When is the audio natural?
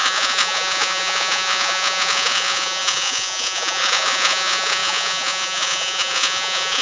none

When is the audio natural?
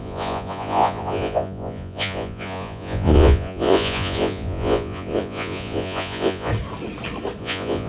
6.5-7.4